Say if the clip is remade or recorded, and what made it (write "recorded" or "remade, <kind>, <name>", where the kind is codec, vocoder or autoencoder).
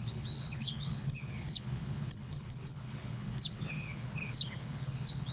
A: remade, codec, HILCodec